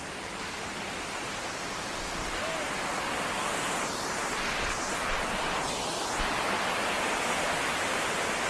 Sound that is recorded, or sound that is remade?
recorded